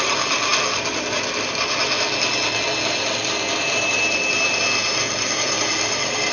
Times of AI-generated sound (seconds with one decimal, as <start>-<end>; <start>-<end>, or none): none

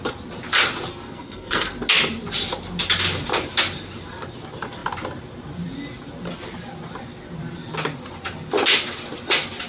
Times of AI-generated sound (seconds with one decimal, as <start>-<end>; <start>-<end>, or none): 0.9-1.7

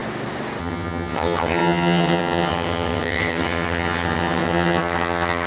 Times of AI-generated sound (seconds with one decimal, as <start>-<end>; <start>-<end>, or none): 0.6-5.5

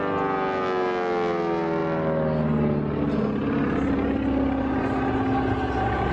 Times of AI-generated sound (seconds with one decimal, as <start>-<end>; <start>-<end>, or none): none

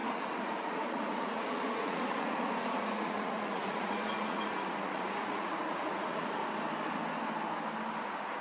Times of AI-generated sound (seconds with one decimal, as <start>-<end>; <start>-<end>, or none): 0.0-6.4; 8.0-8.4

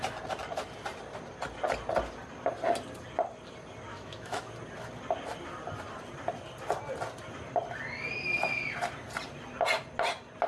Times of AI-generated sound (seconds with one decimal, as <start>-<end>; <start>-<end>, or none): 3.9-4.5

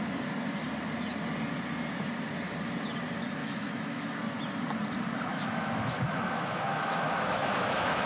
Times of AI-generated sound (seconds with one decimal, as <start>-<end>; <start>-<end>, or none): 3.4-4.2; 5.3-8.1